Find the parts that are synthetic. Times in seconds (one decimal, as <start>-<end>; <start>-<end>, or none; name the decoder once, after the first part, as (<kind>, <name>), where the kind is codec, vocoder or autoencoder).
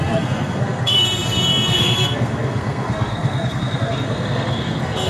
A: 0.0-5.1 (codec, SNAC)